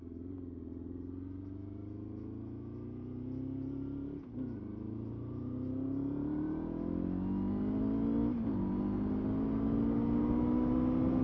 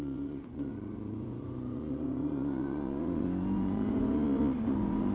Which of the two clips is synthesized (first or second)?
second